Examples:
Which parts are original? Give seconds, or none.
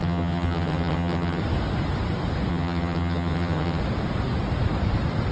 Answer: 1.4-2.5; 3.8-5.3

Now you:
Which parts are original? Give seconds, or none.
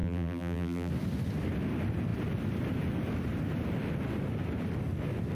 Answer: 0.9-5.3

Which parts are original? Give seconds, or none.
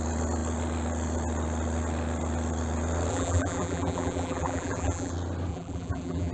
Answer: 0.0-3.1; 5.1-5.5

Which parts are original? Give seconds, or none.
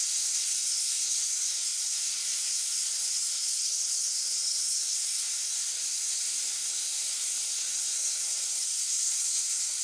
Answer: none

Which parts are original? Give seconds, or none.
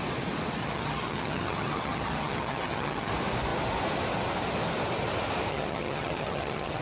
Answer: 0.0-0.6; 3.1-5.5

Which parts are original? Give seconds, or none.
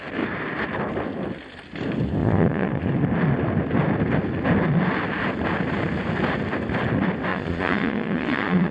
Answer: 0.0-2.2; 2.8-7.3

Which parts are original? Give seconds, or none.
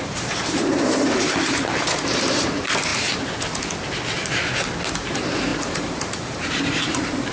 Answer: 2.9-4.9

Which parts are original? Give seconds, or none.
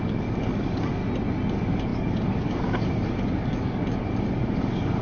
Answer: 1.0-1.5